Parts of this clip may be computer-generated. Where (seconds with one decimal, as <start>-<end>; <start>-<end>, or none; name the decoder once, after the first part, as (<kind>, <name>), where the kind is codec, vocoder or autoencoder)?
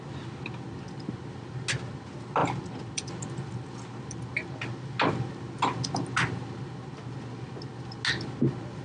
none